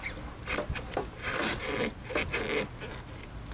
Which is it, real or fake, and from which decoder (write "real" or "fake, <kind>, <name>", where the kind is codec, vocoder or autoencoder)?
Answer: real